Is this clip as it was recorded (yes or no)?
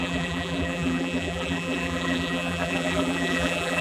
no